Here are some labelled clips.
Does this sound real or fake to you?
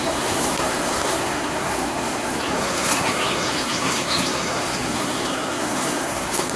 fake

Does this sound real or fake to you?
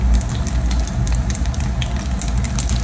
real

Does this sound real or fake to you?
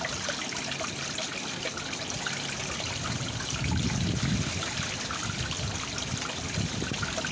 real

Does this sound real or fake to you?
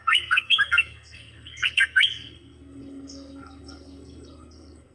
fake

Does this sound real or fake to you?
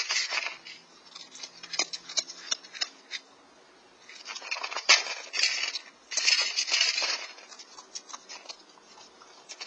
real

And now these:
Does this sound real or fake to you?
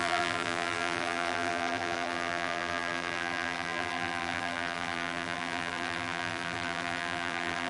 fake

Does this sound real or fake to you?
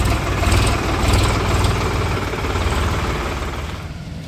real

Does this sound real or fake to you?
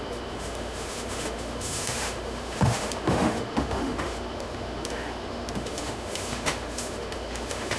fake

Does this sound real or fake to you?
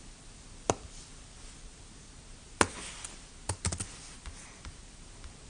real